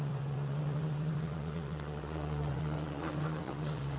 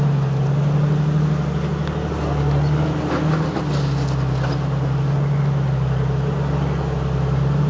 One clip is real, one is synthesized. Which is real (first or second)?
second